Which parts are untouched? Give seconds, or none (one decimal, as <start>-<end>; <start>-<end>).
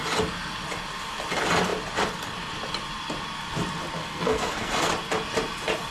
0.0-4.0; 4.9-5.9